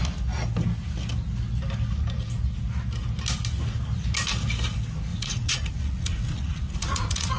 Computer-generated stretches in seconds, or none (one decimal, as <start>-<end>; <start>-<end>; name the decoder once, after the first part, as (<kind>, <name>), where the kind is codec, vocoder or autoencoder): 5.1-7.4 (vocoder, Vocos)